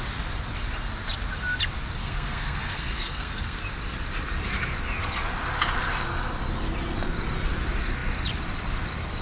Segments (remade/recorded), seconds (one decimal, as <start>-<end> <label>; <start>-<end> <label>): 0.0-2.0 recorded; 2.0-3.6 remade; 3.6-9.2 recorded